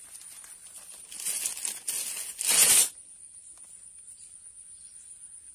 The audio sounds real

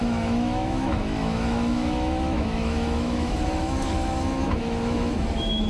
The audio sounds fake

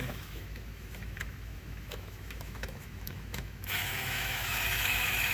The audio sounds fake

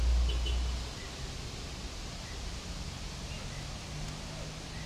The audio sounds real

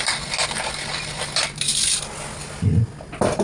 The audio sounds real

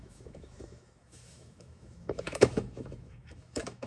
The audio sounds fake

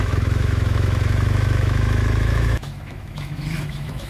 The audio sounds fake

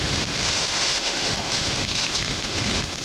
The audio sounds fake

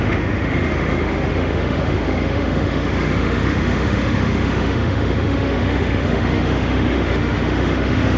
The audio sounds fake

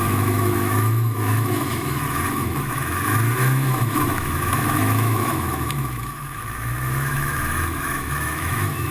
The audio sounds fake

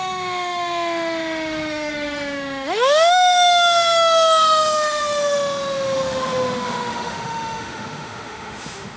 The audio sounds fake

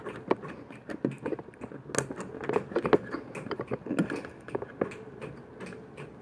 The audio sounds real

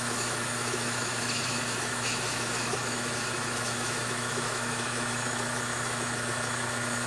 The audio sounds fake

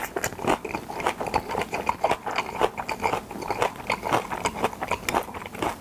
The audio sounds real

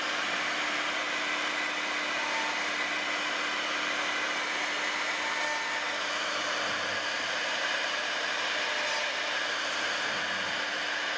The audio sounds real